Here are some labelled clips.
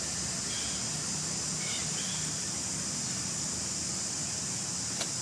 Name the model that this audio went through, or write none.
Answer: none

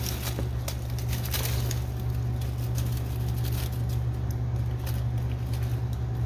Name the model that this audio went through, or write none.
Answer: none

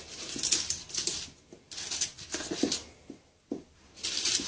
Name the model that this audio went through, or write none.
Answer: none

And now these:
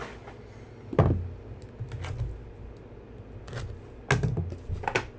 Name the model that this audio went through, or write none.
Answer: none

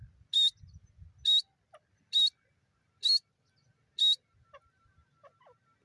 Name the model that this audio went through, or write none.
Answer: none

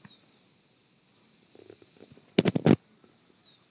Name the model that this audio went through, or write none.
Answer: none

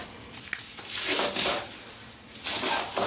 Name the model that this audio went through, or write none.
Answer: none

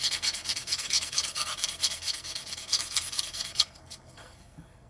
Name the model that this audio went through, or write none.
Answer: codec, SNAC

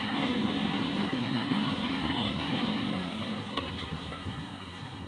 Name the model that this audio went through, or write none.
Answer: codec, SNAC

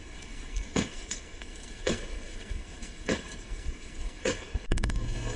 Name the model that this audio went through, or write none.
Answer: codec, SNAC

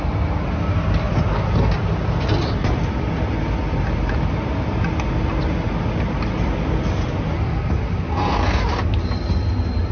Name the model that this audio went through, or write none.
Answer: none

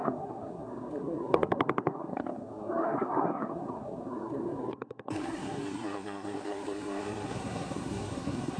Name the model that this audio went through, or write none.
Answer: codec, SNAC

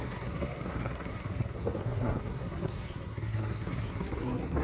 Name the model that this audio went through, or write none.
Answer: codec, SNAC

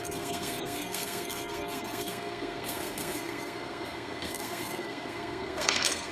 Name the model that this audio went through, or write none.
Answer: codec, SNAC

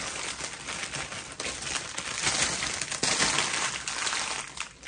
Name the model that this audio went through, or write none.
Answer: none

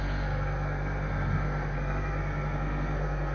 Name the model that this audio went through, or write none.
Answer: codec, SNAC